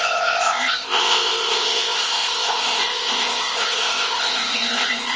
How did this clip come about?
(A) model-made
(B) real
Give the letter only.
A